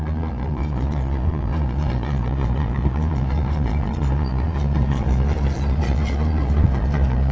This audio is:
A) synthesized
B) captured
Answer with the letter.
A